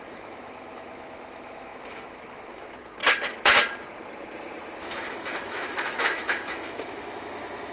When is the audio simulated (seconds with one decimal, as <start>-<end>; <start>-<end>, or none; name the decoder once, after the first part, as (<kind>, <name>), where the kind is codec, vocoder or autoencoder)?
0.0-3.0 (autoencoder, DAC-VAE); 4.8-7.7